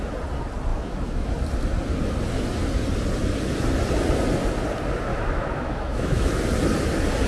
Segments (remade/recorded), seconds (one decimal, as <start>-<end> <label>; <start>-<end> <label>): 0.0-0.7 recorded; 0.7-1.3 remade; 1.3-5.1 recorded; 5.1-6.3 remade; 6.3-7.3 recorded